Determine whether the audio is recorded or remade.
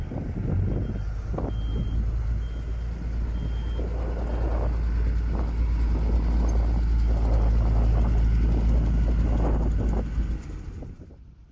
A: recorded